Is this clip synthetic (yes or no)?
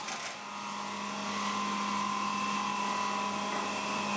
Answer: no